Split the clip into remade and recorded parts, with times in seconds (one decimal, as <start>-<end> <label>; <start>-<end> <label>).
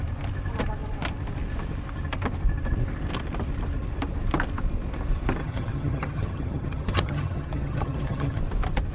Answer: 0.0-5.4 recorded; 5.4-8.4 remade; 8.4-8.9 recorded